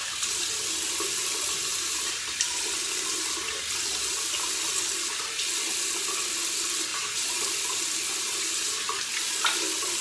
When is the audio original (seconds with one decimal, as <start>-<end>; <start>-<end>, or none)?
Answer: 0.0-6.9; 7.5-10.0